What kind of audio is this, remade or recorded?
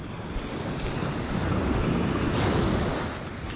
recorded